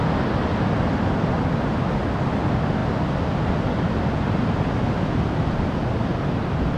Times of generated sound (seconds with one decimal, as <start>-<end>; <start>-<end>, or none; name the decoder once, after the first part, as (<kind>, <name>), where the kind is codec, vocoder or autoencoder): none